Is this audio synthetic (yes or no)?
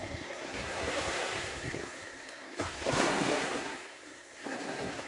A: yes